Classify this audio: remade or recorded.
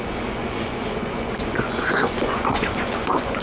remade